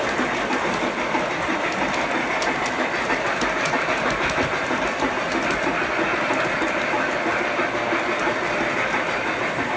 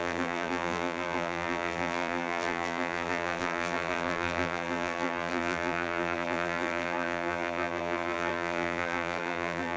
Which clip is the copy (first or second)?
second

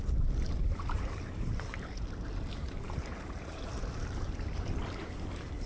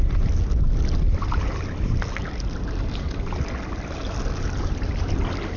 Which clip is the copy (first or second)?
first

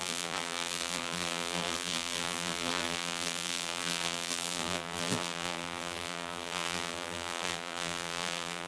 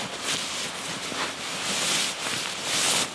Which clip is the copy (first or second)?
first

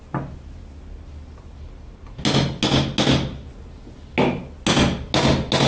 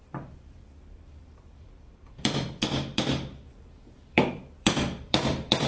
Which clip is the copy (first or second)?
second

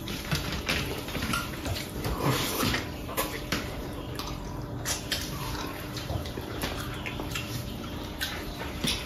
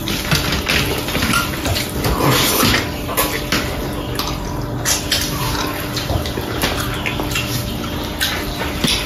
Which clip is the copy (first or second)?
first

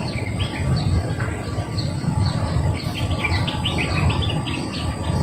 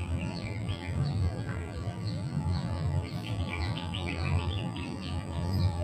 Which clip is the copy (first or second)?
second